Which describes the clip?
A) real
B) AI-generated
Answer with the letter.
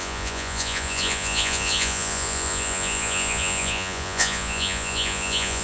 B